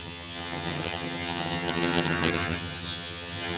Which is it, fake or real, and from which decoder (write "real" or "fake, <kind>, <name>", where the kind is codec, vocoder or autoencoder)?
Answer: fake, vocoder, HiFi-GAN